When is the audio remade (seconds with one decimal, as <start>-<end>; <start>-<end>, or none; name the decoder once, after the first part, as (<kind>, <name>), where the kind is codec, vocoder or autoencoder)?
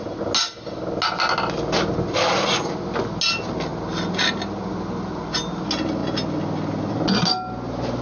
none